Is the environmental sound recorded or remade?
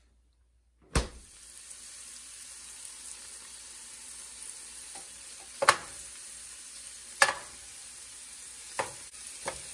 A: recorded